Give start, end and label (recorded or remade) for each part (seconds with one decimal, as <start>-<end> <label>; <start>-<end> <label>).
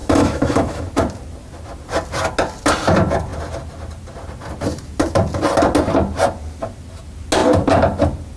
0.0-0.8 remade; 0.8-8.4 recorded